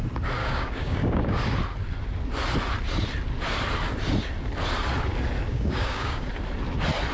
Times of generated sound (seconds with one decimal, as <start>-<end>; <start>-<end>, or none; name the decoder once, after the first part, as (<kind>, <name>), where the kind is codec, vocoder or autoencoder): 0.4-1.4 (codec, DAC); 5.5-6.3